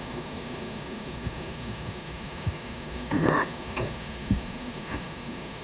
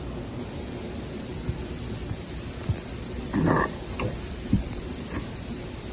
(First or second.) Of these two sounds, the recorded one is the second